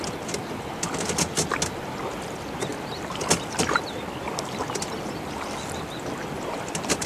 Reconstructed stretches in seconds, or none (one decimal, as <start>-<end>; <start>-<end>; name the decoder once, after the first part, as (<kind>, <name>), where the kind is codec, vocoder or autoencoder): none